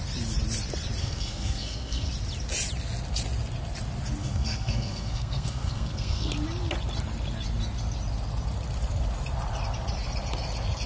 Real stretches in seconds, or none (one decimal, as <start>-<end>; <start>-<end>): 0.0-1.0; 2.1-4.2; 6.3-10.9